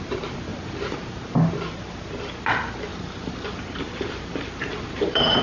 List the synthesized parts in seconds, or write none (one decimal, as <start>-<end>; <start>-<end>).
0.5-1.2; 2.9-5.4